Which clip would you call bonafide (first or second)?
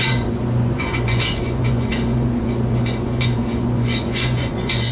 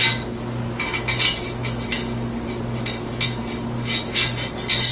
second